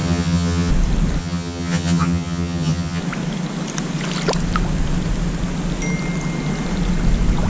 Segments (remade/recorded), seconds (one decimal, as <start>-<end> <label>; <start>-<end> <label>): 0.0-0.7 remade; 0.7-1.2 recorded; 1.2-3.0 remade; 3.0-7.5 recorded